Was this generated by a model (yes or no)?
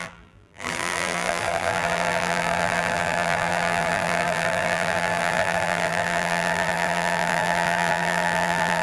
yes